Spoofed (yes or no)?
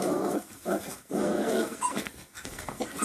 yes